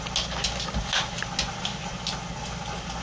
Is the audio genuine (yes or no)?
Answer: yes